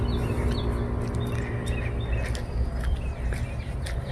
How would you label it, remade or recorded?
recorded